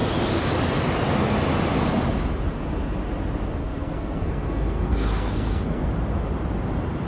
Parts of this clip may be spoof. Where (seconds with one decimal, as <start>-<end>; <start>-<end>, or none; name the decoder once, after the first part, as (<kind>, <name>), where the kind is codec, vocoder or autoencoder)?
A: 3.6-5.9 (codec, SNAC)